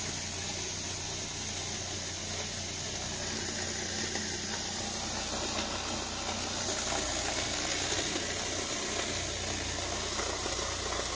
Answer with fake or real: real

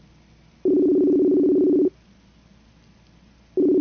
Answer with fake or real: real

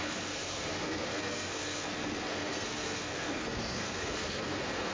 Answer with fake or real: fake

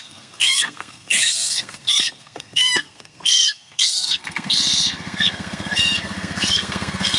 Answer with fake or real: fake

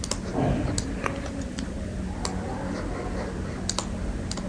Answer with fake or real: real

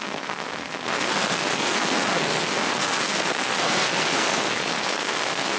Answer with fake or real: fake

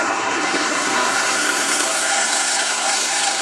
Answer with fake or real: fake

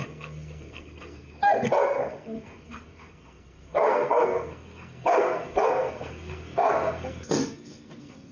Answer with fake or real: fake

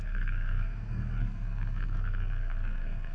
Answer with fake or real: fake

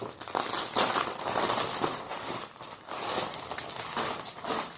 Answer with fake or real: real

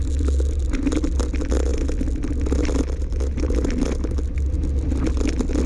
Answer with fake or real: real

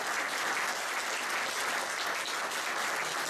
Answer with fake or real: real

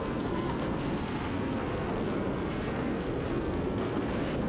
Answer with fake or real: fake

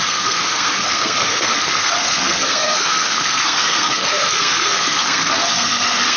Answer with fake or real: fake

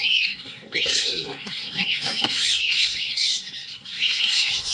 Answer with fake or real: fake